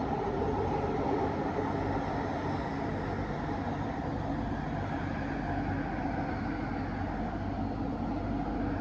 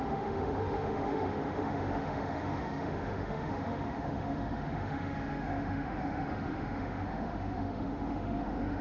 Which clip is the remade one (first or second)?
second